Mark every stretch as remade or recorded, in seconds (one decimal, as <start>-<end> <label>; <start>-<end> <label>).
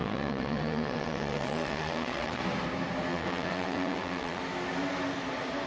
0.0-2.4 remade; 2.4-3.1 recorded; 3.1-4.4 remade; 4.4-5.7 recorded